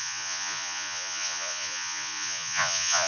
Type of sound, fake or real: fake